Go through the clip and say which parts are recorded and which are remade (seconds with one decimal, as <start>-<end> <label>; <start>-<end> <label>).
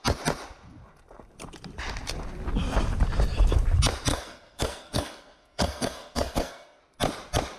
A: 0.0-4.1 recorded; 4.1-6.8 remade; 6.8-7.6 recorded